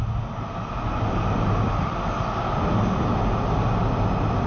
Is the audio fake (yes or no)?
no